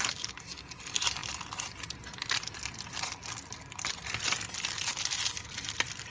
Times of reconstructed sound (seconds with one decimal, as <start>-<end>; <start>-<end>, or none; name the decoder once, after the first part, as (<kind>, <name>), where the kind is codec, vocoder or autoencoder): none